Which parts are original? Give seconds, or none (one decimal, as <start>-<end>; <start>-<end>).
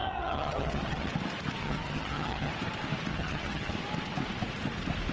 1.1-1.6; 2.5-3.1; 3.7-5.1